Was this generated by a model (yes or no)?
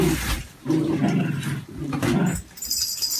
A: no